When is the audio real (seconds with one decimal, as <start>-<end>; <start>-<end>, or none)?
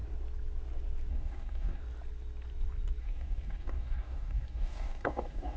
0.0-1.1; 1.8-3.0